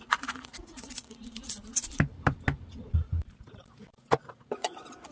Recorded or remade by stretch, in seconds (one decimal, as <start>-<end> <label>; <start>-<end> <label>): 0.0-1.2 remade; 1.2-4.3 recorded; 4.3-5.1 remade